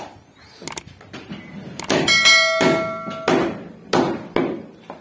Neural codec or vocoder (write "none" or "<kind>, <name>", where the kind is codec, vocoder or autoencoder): none